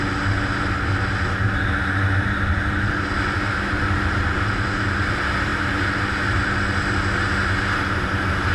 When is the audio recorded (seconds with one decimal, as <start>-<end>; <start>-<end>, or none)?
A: 0.0-8.5